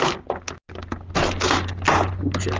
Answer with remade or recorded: recorded